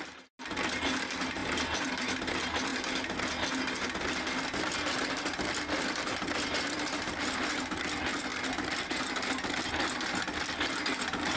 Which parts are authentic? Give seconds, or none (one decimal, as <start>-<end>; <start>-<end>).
0.0-11.4